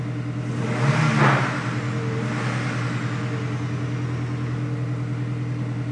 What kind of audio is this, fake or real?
real